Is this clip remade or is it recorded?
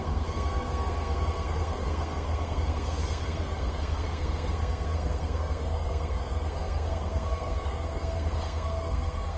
remade